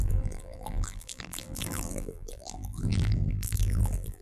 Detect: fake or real fake